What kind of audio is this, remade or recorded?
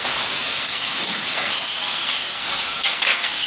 remade